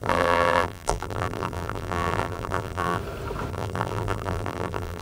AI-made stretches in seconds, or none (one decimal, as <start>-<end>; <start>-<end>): 0.0-3.0; 3.5-5.0

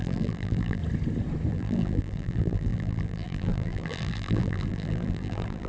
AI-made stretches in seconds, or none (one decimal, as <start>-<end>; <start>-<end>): 0.0-0.8; 1.5-5.7